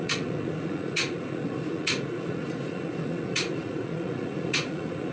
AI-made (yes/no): yes